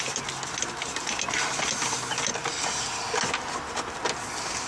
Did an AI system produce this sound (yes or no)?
no